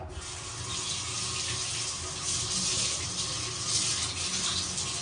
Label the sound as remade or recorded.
recorded